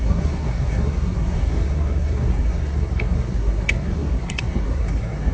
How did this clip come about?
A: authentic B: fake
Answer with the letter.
B